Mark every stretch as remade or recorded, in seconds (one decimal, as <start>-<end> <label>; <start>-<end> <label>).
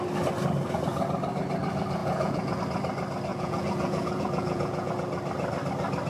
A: 0.0-2.0 recorded; 2.0-2.6 remade; 2.6-3.3 recorded; 3.3-4.9 remade; 4.9-6.1 recorded